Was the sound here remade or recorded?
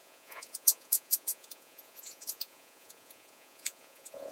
remade